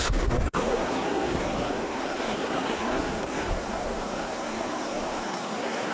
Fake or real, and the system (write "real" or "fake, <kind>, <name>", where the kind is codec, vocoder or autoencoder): fake, codec, SNAC